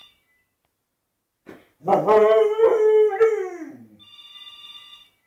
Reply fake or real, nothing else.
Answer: real